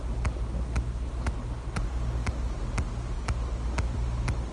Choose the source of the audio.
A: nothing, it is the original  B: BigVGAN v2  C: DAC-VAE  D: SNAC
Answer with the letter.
A